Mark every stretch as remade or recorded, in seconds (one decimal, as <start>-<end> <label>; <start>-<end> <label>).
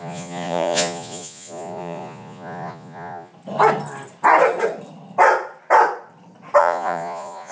0.0-3.3 remade; 3.3-6.6 recorded; 6.6-7.5 remade